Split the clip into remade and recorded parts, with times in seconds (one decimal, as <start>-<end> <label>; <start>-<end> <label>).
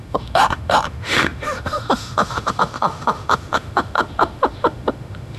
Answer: 0.0-5.4 remade